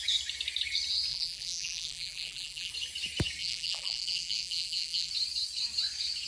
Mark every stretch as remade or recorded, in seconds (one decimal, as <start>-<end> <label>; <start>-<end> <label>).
0.0-1.1 recorded; 1.1-2.7 remade; 2.7-3.4 recorded; 3.4-5.1 remade; 5.1-6.3 recorded